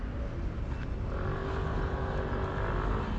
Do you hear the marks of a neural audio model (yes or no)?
no